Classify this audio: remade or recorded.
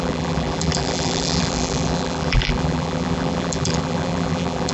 remade